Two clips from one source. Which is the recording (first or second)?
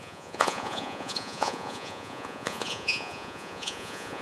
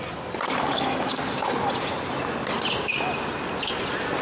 second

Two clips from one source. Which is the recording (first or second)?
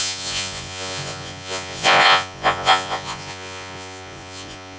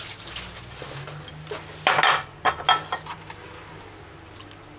second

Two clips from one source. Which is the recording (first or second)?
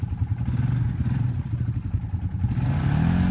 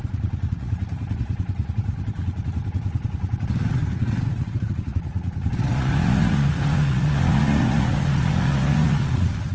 first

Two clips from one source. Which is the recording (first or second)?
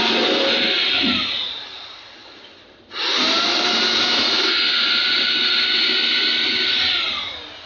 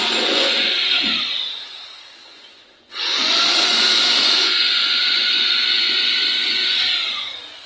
first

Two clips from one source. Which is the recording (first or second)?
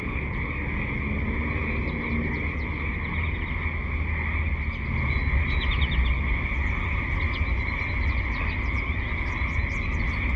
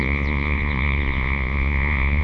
first